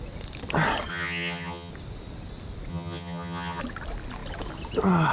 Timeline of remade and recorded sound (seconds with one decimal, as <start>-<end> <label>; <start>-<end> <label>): 0.0-0.9 recorded; 0.9-1.7 remade; 1.7-2.7 recorded; 2.7-3.6 remade; 3.6-5.1 recorded